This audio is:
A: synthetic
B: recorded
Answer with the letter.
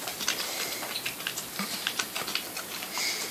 B